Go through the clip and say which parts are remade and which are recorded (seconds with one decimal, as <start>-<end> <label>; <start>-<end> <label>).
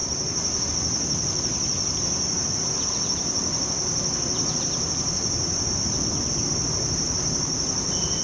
0.0-8.2 recorded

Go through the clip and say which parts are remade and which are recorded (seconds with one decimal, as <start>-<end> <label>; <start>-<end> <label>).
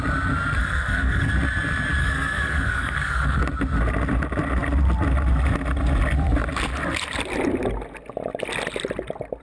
0.0-0.6 recorded; 0.6-1.3 remade; 1.3-2.0 recorded; 2.0-3.4 remade; 3.4-9.4 recorded